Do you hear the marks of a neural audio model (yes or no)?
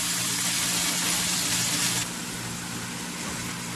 no